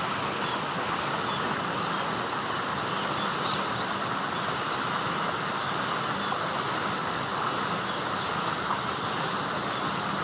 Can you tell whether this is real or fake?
real